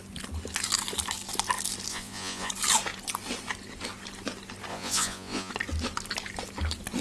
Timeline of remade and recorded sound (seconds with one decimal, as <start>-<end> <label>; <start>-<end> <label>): 0.0-1.9 recorded; 1.9-2.5 remade; 2.5-4.7 recorded; 4.7-5.5 remade; 5.5-7.0 recorded